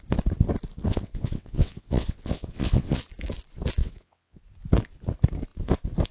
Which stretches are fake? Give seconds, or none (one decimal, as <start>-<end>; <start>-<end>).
0.9-3.0; 3.8-4.4